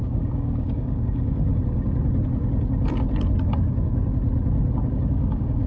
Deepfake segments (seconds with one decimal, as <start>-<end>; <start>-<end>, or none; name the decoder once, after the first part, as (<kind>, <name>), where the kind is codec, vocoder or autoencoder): 0.0-1.5 (codec, DAC); 4.9-5.7